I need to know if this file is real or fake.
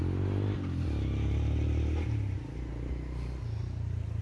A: real